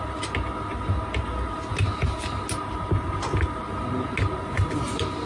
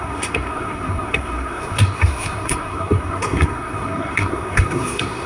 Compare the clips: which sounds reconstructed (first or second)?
second